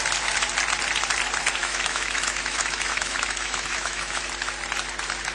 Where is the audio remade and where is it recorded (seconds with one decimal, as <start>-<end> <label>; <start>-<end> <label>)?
0.0-1.6 recorded; 1.6-4.2 remade; 4.2-5.3 recorded